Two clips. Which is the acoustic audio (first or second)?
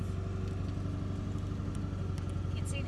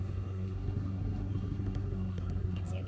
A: first